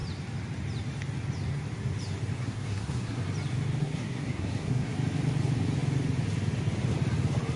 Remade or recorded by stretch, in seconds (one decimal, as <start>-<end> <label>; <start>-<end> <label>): 0.0-2.4 recorded; 2.4-3.2 remade; 3.2-3.8 recorded; 3.8-4.9 remade; 4.9-7.6 recorded